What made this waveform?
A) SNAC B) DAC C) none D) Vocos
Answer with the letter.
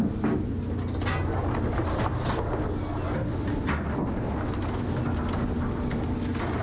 C